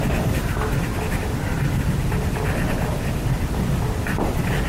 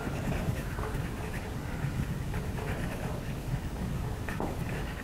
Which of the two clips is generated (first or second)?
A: second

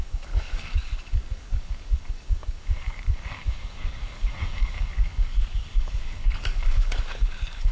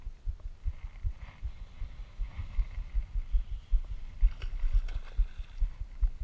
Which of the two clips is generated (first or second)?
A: first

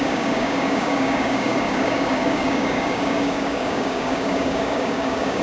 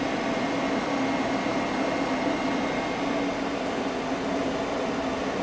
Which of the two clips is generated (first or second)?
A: first